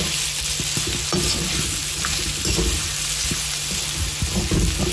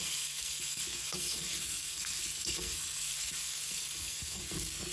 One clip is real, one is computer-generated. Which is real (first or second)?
first